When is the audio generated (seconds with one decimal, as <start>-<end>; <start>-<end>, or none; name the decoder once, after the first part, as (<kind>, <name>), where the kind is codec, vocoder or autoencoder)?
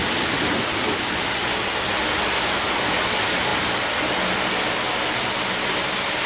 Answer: none